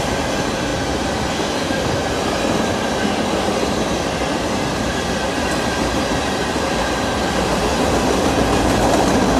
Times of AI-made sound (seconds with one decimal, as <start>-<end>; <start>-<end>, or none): none